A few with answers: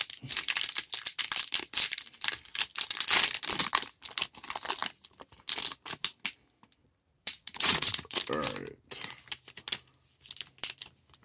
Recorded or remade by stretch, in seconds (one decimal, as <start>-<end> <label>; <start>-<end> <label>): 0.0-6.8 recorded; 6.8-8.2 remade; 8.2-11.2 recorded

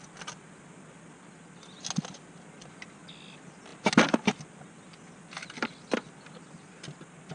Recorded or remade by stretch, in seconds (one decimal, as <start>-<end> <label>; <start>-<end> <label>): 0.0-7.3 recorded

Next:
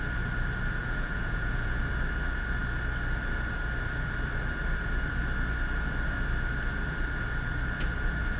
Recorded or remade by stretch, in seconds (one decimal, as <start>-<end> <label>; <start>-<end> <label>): 0.0-0.8 recorded; 0.8-1.8 remade; 1.8-8.4 recorded

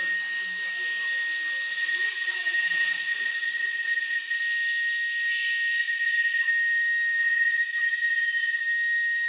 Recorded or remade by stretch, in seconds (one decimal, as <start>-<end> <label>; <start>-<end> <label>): 0.0-1.7 recorded; 1.7-4.4 remade; 4.4-5.8 recorded; 5.8-6.5 remade; 6.5-7.2 recorded; 7.2-8.6 remade; 8.6-9.3 recorded

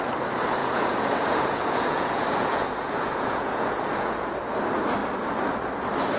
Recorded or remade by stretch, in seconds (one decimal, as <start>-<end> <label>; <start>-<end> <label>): 0.0-0.6 recorded; 0.6-4.3 remade; 4.3-6.2 recorded